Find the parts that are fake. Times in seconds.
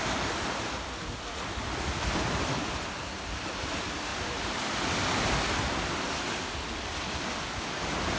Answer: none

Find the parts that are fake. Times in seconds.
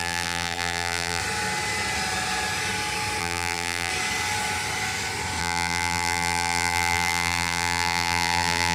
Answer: 0.0-1.2 (vocoder, BigVGAN v2); 3.2-3.9; 5.4-8.7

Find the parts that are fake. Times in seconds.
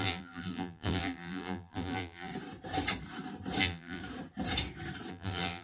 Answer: 0.0-2.3 (vocoder, BigVGAN v2); 3.6-4.0; 5.1-5.6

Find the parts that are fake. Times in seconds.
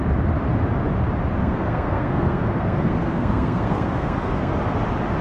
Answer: 1.4-4.5 (codec, SNAC)